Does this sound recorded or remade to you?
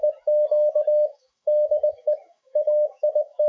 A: remade